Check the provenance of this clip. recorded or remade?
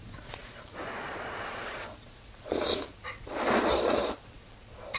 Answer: remade